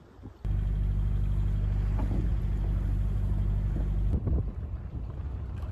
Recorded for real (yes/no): yes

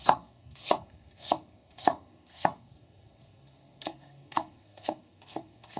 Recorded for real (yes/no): no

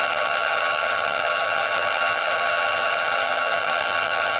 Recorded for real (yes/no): no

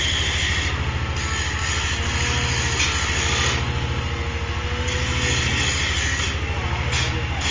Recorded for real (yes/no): yes